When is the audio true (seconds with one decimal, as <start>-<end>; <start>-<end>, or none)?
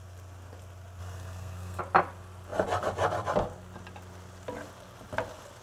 0.0-1.0; 1.8-5.6